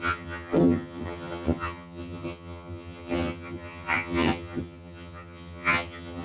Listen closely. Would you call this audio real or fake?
fake